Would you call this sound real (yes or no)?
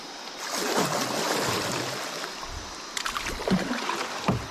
yes